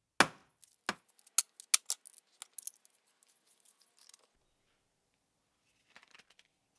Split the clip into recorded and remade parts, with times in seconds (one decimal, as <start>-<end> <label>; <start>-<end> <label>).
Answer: 0.0-6.8 recorded